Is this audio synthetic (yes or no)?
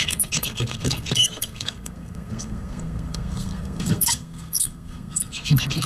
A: yes